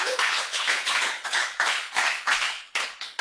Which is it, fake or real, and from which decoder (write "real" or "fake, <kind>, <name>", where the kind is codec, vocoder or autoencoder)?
fake, codec, HILCodec